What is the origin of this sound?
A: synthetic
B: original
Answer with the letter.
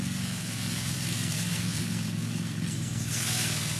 A